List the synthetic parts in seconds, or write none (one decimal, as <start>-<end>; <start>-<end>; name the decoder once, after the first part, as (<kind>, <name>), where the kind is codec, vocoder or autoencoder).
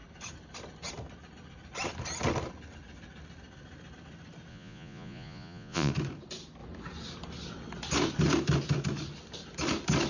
4.5-5.9 (vocoder, Vocos)